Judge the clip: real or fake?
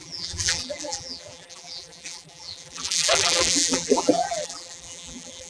fake